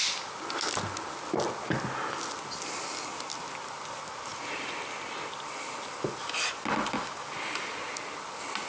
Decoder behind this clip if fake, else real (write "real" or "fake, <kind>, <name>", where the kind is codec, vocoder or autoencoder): real